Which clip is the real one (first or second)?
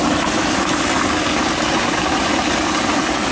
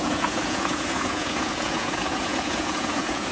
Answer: first